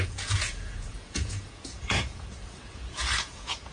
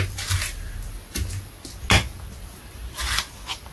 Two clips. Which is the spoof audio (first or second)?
first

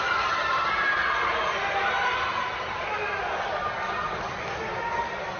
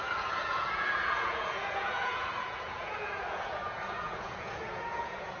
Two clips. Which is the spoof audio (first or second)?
second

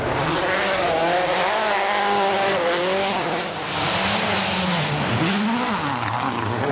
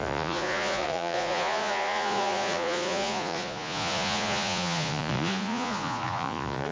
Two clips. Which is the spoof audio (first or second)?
second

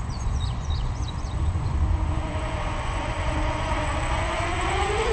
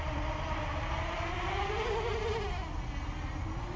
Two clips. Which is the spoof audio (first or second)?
first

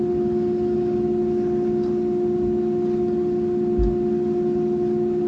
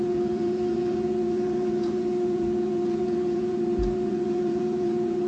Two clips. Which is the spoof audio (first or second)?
second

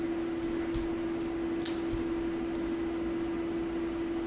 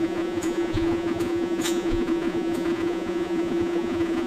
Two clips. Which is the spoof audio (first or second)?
second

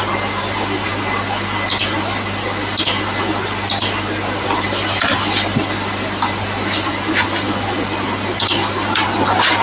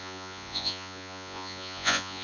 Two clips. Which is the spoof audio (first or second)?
second